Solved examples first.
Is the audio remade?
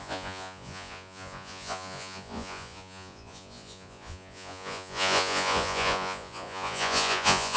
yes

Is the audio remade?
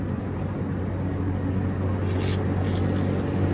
no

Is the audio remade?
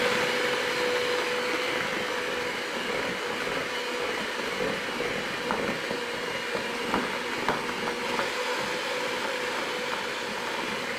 no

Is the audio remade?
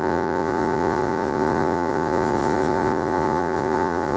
yes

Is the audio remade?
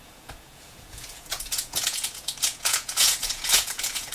yes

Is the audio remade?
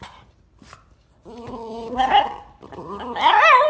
no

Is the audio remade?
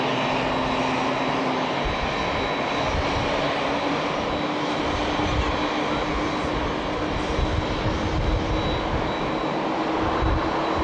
no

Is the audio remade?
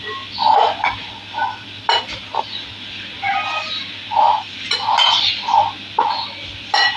no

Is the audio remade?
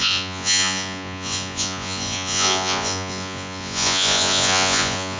yes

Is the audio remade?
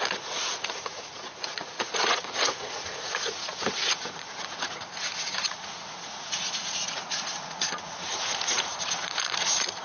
yes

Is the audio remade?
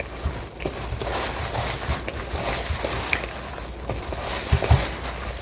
no